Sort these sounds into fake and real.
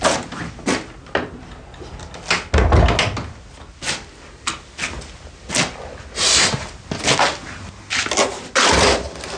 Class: real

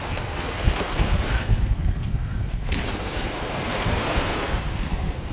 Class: fake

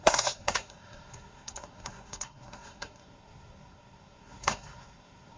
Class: fake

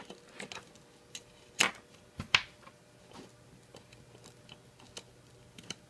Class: real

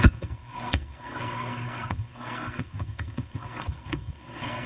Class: fake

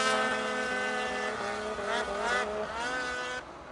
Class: real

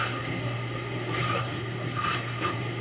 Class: fake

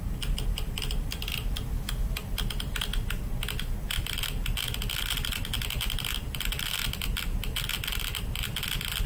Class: real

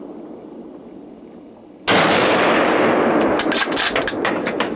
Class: real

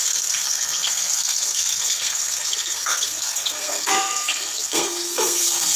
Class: fake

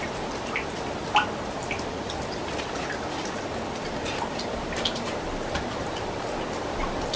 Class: real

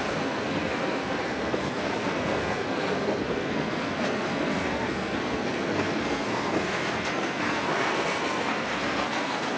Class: fake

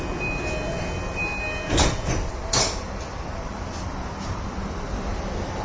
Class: real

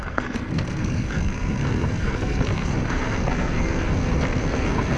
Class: fake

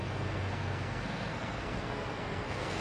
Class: fake